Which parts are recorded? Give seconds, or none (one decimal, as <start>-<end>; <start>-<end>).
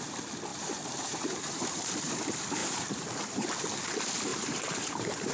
0.0-0.5; 2.2-2.6; 3.5-4.3